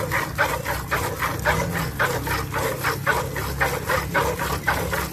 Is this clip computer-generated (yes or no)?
no